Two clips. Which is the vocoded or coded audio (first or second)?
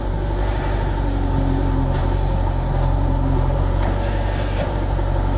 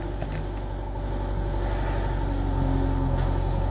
first